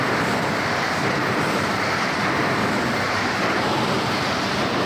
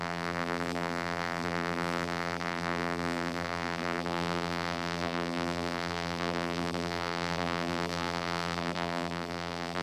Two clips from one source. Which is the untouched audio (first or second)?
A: first